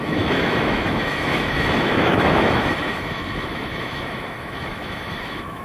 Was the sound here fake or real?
fake